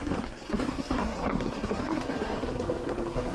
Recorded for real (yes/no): no